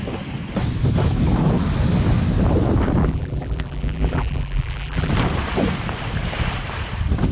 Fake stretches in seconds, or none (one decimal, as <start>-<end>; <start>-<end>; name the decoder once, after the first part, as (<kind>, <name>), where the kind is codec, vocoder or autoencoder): 3.0-5.1 (vocoder, BigVGAN v2)